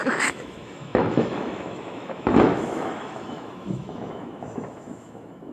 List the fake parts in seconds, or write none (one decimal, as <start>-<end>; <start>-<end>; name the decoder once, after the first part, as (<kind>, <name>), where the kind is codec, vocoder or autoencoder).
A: 0.0-5.5 (autoencoder, DAC-VAE)